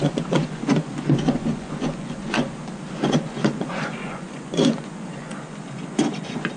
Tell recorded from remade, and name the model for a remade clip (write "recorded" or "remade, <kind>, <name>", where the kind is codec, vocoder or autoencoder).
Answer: remade, vocoder, Vocos